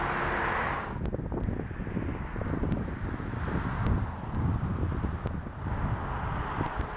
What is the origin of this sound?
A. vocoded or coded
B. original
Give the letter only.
B